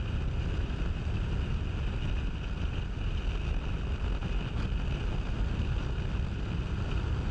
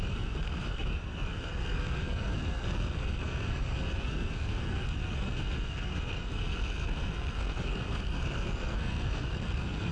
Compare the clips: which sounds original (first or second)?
first